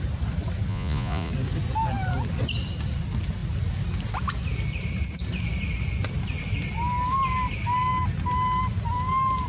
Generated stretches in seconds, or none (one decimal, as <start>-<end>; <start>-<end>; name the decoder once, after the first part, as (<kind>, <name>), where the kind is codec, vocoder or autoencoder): 0.7-1.3 (vocoder, Vocos)